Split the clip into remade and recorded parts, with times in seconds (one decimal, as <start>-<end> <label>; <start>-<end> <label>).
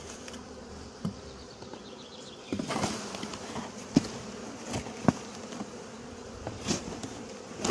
0.0-7.7 remade